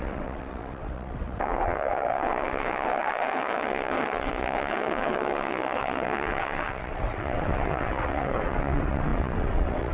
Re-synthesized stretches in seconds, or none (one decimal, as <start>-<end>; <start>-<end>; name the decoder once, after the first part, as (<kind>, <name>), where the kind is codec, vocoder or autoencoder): 0.0-9.9 (vocoder, WaveNeXt)